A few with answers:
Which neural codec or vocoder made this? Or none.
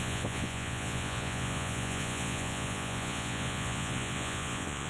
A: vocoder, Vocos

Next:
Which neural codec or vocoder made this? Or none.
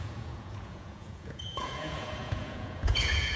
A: vocoder, Vocos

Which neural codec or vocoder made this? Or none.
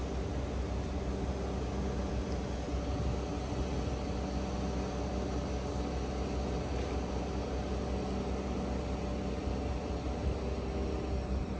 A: none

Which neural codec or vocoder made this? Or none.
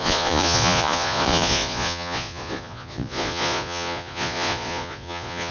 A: vocoder, Vocos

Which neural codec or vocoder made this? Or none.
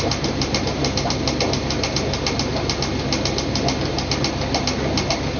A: none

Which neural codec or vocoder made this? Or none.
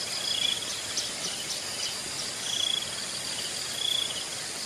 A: none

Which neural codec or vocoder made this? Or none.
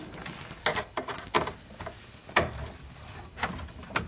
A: none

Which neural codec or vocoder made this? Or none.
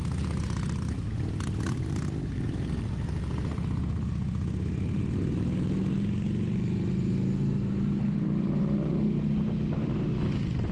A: none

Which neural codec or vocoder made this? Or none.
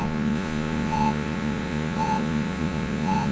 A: vocoder, Vocos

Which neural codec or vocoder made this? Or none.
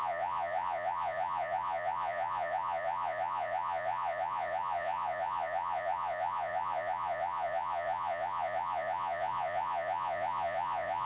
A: vocoder, Vocos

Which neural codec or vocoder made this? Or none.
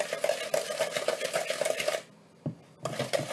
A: none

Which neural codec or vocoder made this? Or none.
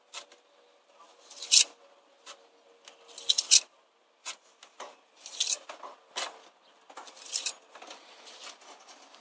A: none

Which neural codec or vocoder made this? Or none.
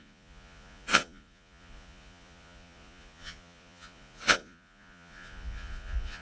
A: vocoder, Vocos